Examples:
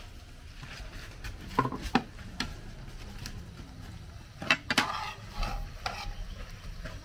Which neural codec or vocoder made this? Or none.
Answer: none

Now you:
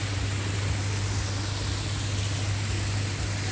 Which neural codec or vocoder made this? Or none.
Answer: none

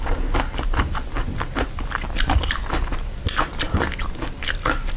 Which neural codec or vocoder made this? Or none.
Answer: none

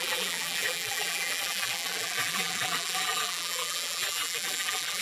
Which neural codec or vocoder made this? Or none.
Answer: vocoder, BigVGAN v2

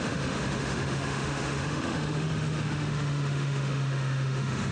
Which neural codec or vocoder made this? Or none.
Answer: autoencoder, DAC-VAE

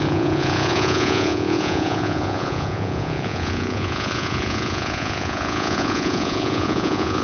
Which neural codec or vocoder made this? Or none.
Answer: vocoder, Vocos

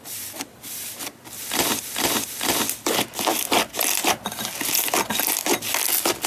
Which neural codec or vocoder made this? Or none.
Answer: none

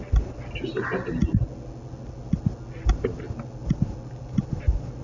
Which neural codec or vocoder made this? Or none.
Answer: none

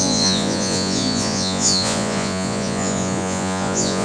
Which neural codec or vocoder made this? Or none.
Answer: vocoder, Vocos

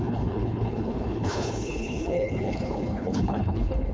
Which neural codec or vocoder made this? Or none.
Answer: codec, HILCodec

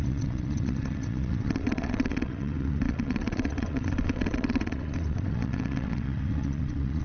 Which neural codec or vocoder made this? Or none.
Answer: vocoder, WaveNeXt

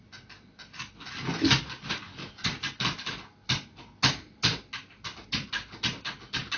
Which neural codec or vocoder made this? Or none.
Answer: none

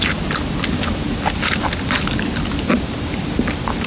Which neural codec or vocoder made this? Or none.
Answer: none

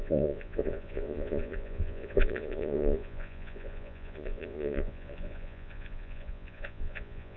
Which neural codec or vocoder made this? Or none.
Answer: vocoder, Vocos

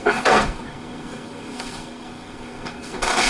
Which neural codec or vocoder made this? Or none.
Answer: codec, SNAC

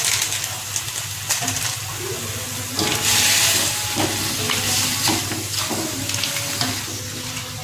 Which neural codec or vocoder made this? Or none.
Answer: none